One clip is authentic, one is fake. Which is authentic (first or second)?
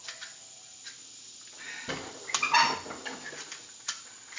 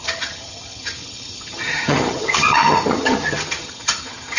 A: first